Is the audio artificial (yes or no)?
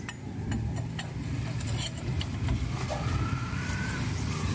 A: no